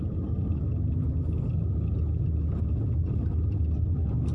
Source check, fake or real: real